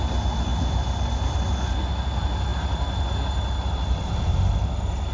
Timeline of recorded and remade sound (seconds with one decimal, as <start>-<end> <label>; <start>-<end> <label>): 0.0-5.1 recorded